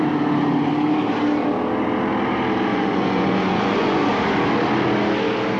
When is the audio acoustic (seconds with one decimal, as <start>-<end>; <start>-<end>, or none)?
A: 0.0-2.7; 4.1-5.6